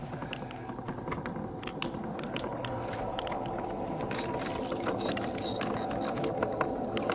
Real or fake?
real